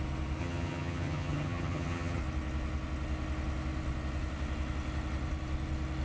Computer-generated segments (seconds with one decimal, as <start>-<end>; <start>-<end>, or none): 0.4-2.2